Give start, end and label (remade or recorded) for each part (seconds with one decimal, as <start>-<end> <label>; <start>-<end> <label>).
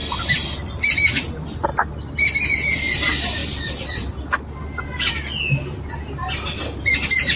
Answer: 0.0-7.4 recorded